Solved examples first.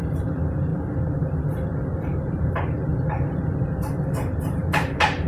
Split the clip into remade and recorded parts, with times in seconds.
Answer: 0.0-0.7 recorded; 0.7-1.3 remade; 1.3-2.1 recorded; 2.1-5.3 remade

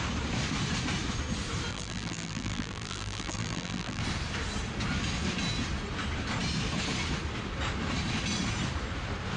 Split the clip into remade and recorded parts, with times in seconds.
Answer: 0.0-1.7 recorded; 1.7-4.0 remade; 4.0-9.4 recorded